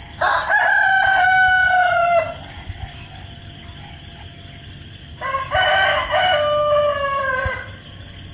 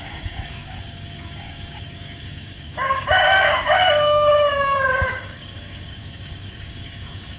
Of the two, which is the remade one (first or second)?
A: second